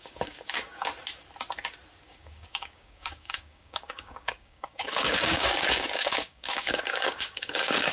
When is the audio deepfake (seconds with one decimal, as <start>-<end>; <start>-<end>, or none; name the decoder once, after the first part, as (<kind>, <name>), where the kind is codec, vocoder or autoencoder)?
0.0-0.9 (codec, DAC); 2.0-7.9